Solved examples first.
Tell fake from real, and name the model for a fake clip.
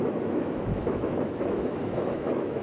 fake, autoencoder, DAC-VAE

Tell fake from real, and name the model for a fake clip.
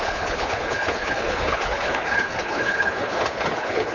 fake, codec, HILCodec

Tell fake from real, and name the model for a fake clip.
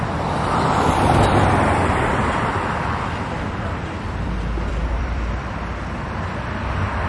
fake, vocoder, BigVGAN v2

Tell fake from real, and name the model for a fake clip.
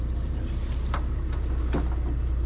real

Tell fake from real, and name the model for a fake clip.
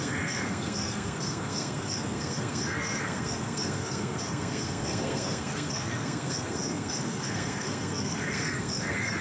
fake, codec, SNAC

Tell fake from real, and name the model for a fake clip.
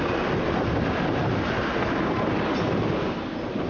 real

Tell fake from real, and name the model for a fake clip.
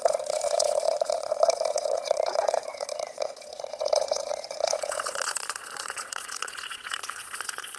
fake, vocoder, Vocos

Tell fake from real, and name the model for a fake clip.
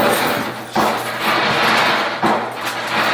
real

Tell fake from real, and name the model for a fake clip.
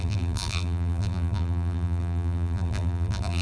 fake, vocoder, BigVGAN v2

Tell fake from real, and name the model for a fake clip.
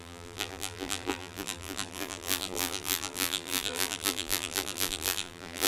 fake, vocoder, BigVGAN v2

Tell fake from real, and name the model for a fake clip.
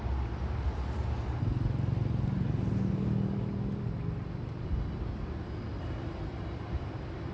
real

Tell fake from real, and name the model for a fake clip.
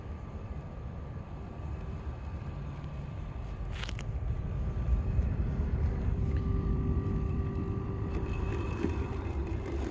fake, vocoder, BigVGAN v2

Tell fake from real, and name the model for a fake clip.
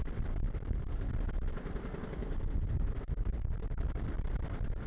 real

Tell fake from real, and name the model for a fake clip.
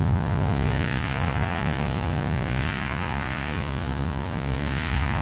fake, vocoder, Vocos